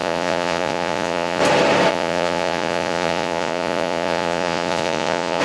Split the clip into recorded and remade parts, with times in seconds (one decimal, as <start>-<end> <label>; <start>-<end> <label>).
0.0-1.4 remade; 1.4-1.9 recorded; 1.9-5.4 remade